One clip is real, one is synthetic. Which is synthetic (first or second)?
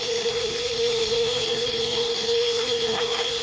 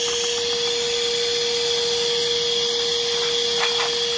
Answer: first